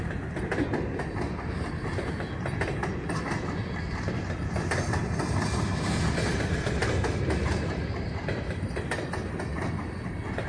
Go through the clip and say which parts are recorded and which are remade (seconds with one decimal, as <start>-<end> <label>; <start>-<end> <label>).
0.0-10.5 recorded